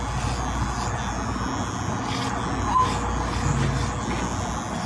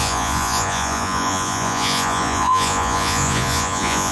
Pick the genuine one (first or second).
first